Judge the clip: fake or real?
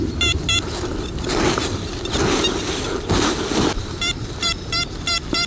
real